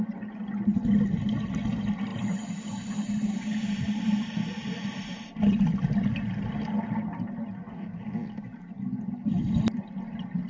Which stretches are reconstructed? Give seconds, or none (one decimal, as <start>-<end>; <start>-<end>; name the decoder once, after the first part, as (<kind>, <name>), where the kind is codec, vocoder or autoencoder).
2.1-3.0 (vocoder, BigVGAN v2)